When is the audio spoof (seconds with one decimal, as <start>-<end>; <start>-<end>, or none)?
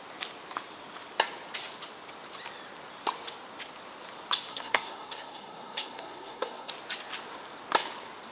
4.5-6.7